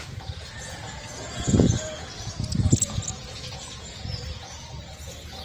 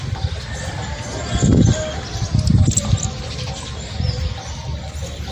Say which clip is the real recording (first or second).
second